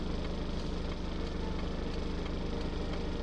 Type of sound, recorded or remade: recorded